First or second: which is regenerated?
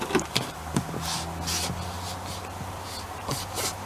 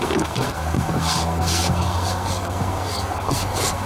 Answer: second